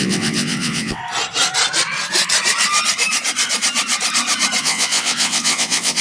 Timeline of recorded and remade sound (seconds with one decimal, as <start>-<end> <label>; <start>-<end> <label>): 0.0-1.0 remade; 1.0-4.6 recorded; 4.6-6.0 remade